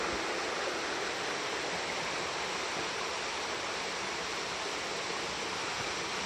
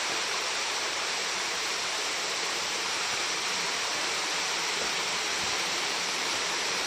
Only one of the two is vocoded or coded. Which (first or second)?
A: second